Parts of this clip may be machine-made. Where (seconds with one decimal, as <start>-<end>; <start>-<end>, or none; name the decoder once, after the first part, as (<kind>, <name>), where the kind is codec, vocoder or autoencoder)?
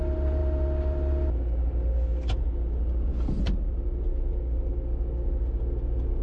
none